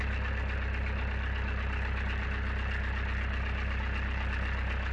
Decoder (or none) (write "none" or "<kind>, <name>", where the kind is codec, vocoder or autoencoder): none